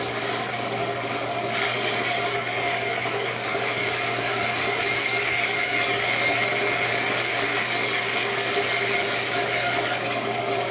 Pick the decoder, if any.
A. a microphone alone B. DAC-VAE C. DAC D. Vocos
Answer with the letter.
C